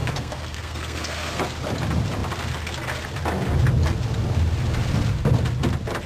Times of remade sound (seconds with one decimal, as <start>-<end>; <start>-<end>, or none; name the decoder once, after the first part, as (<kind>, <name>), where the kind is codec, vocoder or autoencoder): 0.0-1.4 (codec, SNAC)

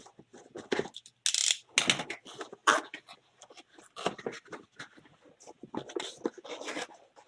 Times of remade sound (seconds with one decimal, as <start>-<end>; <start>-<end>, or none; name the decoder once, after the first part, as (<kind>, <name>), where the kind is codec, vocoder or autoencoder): none

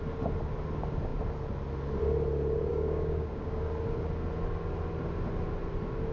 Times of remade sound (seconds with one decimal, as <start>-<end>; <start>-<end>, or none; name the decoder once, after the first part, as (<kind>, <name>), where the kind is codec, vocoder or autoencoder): 2.7-3.6 (codec, DAC)